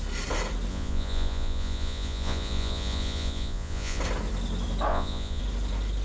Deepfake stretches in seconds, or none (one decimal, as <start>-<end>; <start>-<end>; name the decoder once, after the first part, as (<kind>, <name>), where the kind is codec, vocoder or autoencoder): 0.7-4.0 (vocoder, Vocos); 4.9-5.4